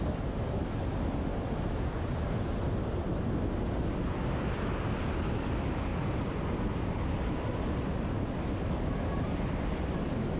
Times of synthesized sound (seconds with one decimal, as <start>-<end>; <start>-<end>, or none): none

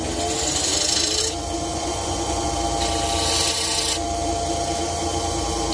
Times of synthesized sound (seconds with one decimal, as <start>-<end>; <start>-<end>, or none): 1.7-2.5

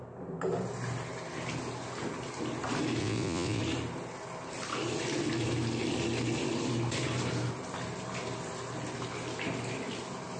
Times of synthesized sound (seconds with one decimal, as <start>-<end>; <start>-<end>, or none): 3.0-3.6

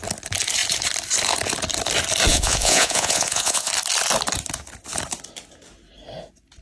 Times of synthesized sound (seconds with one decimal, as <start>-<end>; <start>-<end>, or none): 2.3-3.7

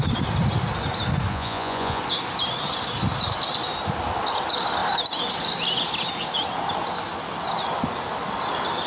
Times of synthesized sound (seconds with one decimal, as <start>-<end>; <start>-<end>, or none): 1.3-2.0